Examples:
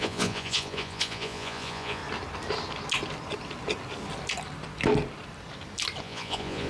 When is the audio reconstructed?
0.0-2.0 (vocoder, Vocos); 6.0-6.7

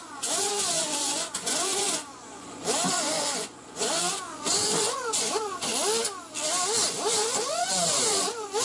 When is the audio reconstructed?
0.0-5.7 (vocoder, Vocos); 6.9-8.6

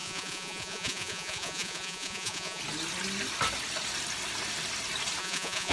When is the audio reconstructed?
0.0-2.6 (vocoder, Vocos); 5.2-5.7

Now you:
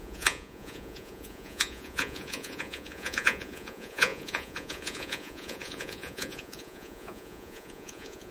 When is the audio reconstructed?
0.0-8.3 (vocoder, Vocos)

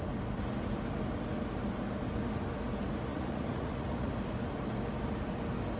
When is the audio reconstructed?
3.1-4.1 (vocoder, Vocos)

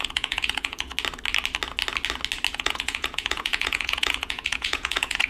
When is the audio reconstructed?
0.0-0.9 (vocoder, Vocos); 2.5-5.3